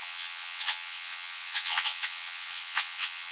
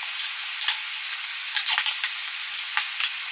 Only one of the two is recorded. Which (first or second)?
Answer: second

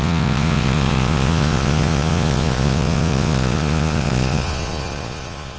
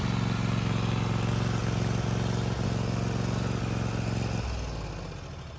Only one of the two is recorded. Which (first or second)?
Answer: second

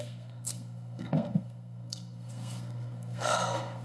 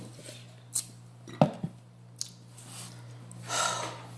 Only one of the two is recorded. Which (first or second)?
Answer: second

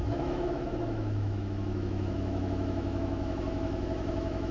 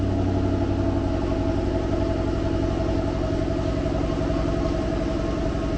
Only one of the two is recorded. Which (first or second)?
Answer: second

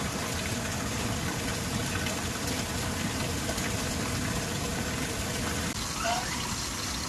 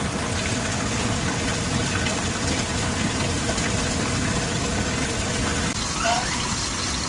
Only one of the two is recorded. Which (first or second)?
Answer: second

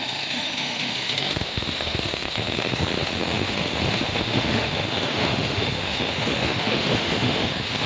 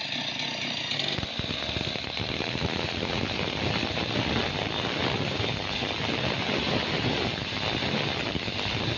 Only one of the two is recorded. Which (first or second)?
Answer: second